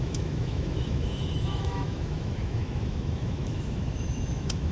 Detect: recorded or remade remade